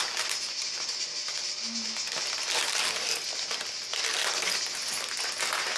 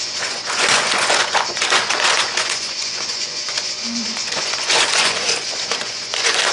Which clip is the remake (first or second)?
second